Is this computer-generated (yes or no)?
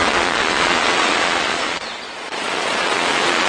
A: yes